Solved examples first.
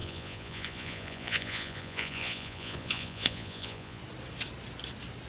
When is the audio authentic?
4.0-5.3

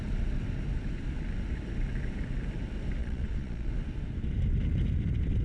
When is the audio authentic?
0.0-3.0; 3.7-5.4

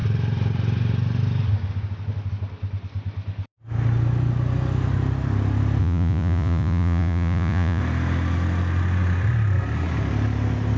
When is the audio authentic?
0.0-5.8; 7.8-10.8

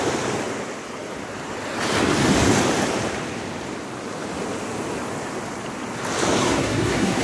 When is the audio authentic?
0.0-6.4

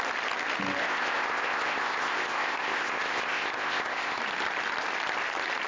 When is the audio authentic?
0.0-0.8; 4.2-5.7

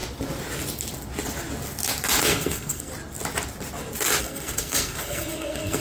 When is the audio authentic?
0.0-2.2; 2.9-4.2

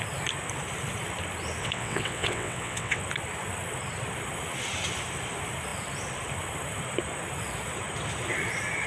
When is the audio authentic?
0.0-1.6; 3.0-8.9